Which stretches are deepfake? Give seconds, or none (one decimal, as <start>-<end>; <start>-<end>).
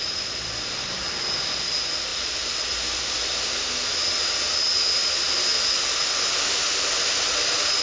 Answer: none